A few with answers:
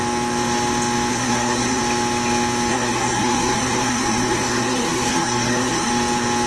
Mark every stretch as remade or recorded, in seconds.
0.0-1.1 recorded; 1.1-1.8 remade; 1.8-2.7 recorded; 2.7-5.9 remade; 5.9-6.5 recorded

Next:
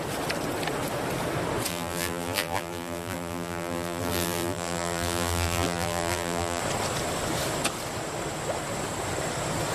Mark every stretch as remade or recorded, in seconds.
0.0-1.7 recorded; 1.7-6.6 remade; 6.6-9.7 recorded

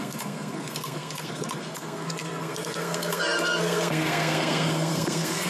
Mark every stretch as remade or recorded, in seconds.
0.0-5.5 remade